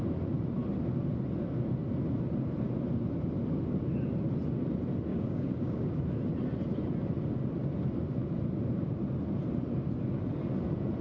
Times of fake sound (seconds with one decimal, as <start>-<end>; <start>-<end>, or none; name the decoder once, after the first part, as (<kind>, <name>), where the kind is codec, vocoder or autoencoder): 5.1-5.9 (codec, DAC)